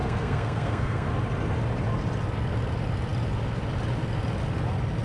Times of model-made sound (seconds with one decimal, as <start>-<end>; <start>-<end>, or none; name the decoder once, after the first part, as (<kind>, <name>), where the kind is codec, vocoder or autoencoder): 0.0-1.1 (codec, SNAC)